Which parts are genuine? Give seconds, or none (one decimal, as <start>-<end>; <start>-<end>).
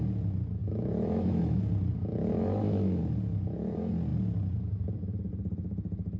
0.0-0.6; 1.6-2.0; 3.0-6.2